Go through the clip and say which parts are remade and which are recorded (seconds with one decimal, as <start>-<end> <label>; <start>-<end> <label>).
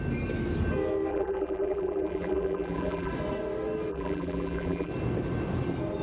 0.0-1.1 recorded; 1.1-3.1 remade; 3.1-3.9 recorded; 3.9-4.9 remade; 4.9-6.0 recorded